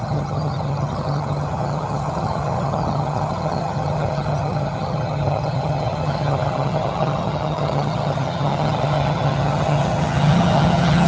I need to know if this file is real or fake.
fake